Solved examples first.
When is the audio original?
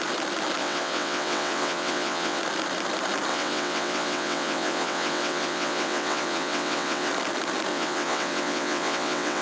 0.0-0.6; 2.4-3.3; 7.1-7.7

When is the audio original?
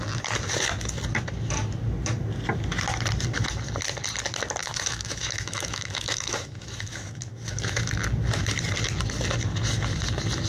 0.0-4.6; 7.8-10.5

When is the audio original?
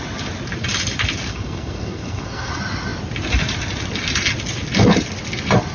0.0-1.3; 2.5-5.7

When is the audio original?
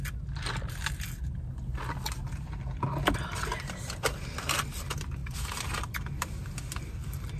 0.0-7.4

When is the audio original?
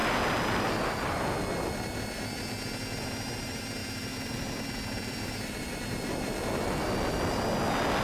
1.3-3.8; 7.1-8.0